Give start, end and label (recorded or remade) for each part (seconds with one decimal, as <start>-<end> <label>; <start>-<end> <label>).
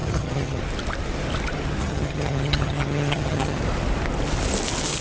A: 0.0-0.6 remade; 0.6-1.8 recorded; 1.8-3.6 remade; 3.6-5.0 recorded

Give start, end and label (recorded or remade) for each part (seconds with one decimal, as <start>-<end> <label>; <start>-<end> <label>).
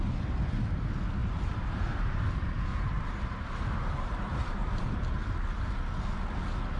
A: 0.0-1.2 recorded; 1.2-2.2 remade; 2.2-2.7 recorded; 2.7-4.9 remade; 4.9-6.8 recorded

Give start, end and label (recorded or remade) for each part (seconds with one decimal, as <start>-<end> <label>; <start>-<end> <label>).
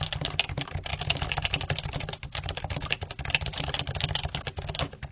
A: 0.0-5.1 recorded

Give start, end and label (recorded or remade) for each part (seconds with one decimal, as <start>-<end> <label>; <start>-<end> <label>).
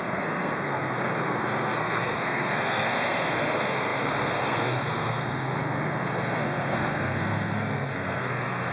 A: 0.0-8.7 remade